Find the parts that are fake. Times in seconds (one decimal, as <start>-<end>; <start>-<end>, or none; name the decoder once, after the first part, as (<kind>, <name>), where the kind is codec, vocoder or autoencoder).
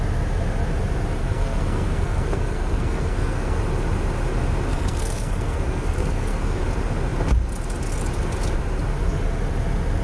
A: 1.2-3.6 (codec, SNAC); 4.7-6.6